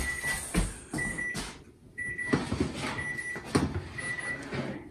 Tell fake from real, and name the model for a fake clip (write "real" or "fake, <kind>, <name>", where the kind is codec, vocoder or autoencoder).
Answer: real